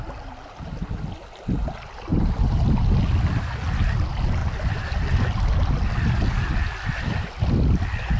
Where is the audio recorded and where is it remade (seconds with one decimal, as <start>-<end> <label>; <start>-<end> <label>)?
0.0-8.2 recorded